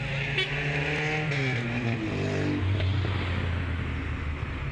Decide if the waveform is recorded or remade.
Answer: recorded